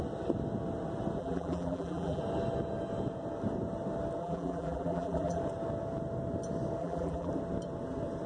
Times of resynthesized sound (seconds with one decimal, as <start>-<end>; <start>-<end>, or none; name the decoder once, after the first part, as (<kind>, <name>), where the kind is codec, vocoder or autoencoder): 1.2-2.2 (vocoder, BigVGAN v2); 4.2-5.4; 6.8-7.3